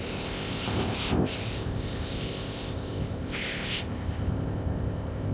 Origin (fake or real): fake